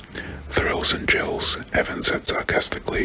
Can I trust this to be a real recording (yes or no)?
yes